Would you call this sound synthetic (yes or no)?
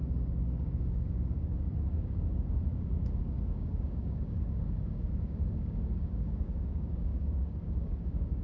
yes